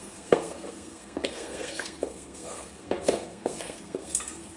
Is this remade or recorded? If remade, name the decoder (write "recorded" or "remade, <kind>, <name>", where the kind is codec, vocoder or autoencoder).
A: remade, codec, SNAC